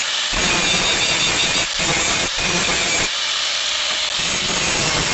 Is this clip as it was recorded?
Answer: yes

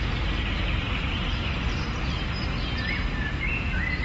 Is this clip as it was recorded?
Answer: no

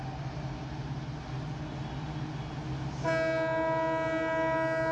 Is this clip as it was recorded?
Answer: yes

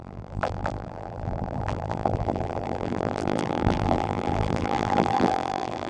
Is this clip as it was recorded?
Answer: no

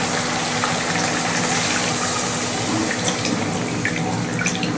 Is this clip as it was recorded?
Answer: no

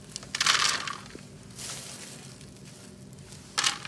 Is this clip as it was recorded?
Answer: yes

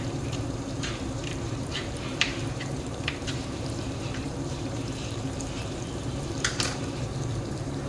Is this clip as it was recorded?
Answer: no